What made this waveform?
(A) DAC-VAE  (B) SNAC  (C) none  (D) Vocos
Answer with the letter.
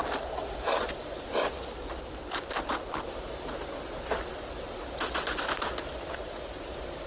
C